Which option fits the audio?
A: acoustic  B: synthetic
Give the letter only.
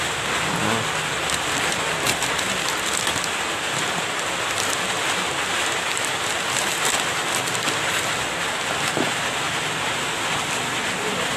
A